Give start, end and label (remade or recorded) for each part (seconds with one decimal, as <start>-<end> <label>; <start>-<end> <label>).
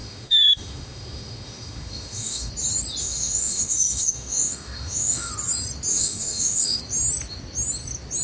0.0-2.5 remade; 2.5-3.0 recorded; 3.0-5.3 remade; 5.3-5.9 recorded; 5.9-6.8 remade; 6.8-8.2 recorded